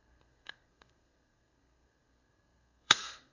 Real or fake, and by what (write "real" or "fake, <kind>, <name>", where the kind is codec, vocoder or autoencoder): fake, codec, SNAC